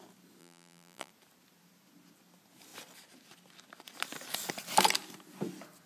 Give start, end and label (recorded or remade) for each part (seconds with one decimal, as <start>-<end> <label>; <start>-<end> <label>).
0.0-0.4 recorded; 0.4-1.1 remade; 1.1-5.9 recorded